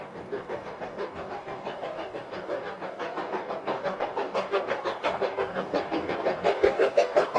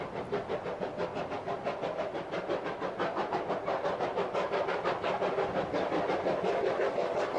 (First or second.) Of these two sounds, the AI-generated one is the first